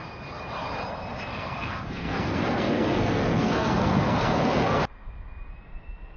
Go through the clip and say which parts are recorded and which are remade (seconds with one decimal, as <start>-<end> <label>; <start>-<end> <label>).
0.0-1.3 recorded; 1.3-4.8 remade; 4.8-6.2 recorded